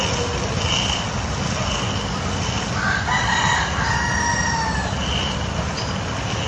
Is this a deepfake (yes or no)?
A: no